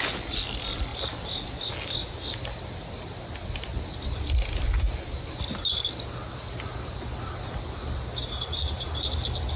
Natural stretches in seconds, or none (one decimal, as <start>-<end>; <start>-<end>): 0.0-9.6

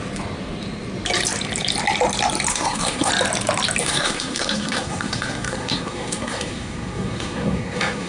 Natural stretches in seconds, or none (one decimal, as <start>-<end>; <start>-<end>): 0.0-2.5; 3.1-3.8

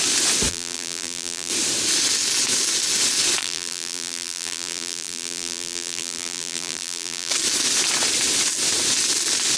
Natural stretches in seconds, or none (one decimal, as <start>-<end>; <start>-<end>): 0.0-0.5; 1.5-3.4; 7.3-9.6